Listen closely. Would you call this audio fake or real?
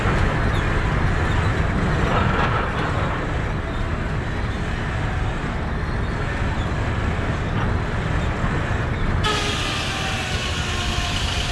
real